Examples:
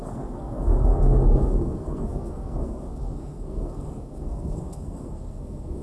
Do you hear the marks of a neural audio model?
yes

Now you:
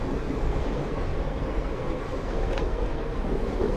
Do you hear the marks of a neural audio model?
yes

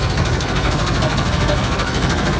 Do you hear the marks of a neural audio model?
yes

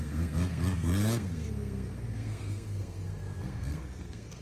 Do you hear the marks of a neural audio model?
yes